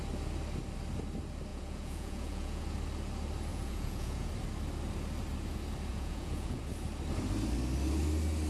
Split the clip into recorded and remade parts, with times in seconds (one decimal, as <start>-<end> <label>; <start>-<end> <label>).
0.0-1.5 recorded; 1.5-2.6 remade; 2.6-3.5 recorded; 3.5-4.3 remade; 4.3-5.9 recorded; 5.9-6.6 remade; 6.6-8.5 recorded